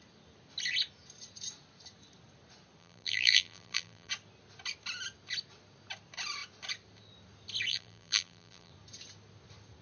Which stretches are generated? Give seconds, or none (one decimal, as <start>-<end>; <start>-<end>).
2.8-4.1; 7.7-8.7